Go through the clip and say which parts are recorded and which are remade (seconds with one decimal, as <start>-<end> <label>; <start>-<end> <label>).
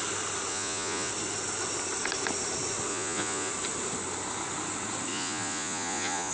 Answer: 0.0-0.5 recorded; 0.5-1.1 remade; 1.1-2.9 recorded; 2.9-3.5 remade; 3.5-5.1 recorded; 5.1-6.3 remade